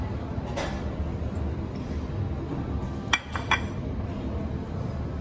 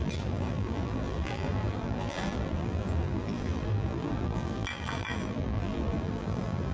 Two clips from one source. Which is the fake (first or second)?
second